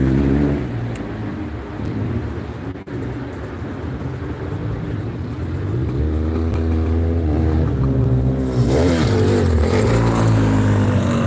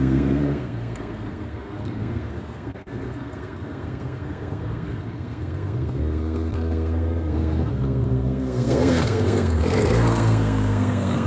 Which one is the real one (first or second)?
first